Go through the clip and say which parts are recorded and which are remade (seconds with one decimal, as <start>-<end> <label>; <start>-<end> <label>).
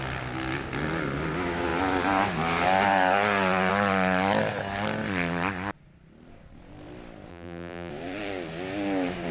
0.0-7.3 recorded; 7.3-7.9 remade; 7.9-9.3 recorded